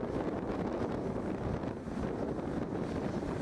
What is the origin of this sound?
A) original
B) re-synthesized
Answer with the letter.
A